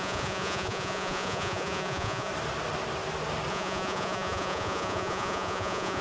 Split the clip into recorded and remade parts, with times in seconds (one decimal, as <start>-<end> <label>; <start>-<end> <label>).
0.0-2.3 remade; 2.3-3.5 recorded; 3.5-6.0 remade